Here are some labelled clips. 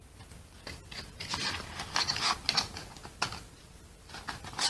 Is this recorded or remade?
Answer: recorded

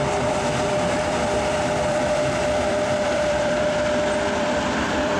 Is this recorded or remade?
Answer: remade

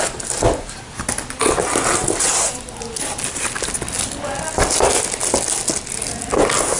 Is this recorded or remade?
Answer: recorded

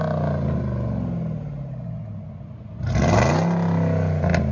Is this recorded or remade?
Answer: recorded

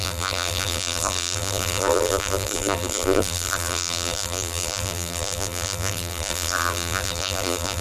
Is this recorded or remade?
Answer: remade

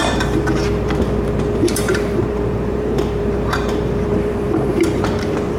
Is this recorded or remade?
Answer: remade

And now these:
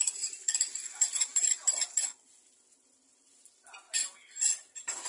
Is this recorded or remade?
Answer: remade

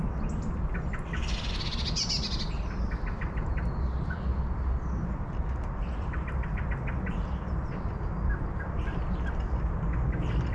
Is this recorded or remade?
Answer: recorded